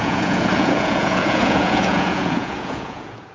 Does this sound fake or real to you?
fake